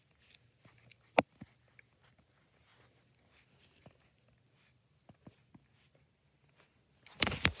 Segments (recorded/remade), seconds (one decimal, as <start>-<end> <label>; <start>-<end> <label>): 0.0-7.6 recorded